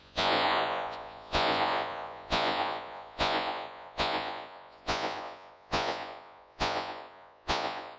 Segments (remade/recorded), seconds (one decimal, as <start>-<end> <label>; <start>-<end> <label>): 0.0-8.0 remade